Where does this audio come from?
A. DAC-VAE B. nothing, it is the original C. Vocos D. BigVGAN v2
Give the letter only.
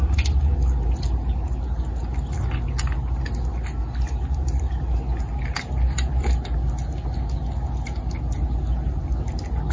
B